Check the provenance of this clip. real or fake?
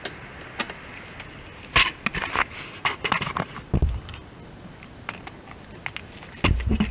real